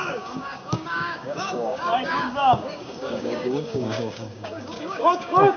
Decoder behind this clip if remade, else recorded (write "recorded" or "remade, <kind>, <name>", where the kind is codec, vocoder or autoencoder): remade, codec, DAC